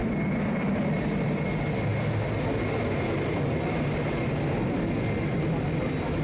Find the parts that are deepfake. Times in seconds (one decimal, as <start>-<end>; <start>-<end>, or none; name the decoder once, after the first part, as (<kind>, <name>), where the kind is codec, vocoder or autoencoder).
0.0-0.8 (vocoder, BigVGAN v2)